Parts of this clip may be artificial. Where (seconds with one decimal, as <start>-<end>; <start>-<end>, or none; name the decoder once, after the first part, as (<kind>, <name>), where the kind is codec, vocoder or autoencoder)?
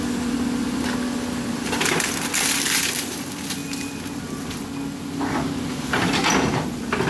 none